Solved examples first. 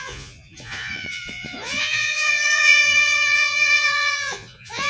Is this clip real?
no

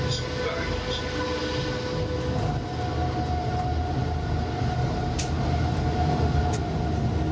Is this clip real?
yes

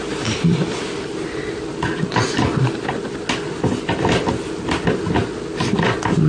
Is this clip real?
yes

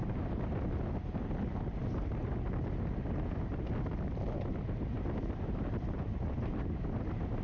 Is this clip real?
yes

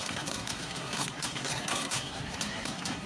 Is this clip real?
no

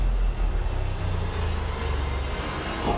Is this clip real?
yes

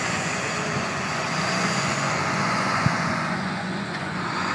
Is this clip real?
no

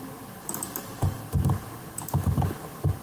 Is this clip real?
yes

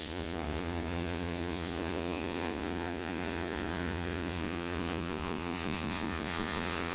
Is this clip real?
no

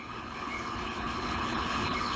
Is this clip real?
no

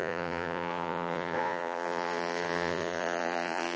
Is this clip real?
no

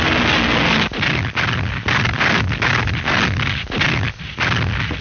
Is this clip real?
yes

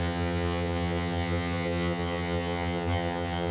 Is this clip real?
no